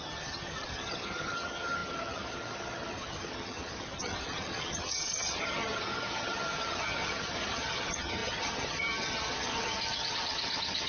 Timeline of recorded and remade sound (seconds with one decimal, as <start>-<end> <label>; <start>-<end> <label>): 0.0-10.9 remade

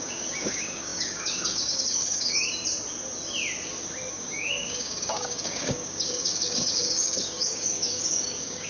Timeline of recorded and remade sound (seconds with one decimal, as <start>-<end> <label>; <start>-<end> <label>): 0.0-2.6 remade; 2.6-4.1 recorded; 4.1-8.7 remade